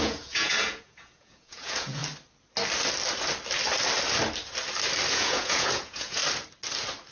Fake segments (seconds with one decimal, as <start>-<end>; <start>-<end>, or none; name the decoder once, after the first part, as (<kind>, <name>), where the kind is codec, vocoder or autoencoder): 0.0-2.0 (vocoder, Vocos); 5.1-6.2